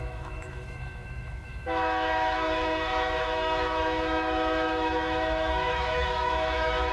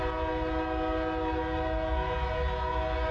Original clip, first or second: second